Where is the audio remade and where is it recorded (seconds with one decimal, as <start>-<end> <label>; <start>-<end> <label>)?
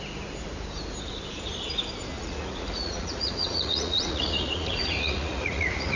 0.0-2.1 recorded; 2.1-6.0 remade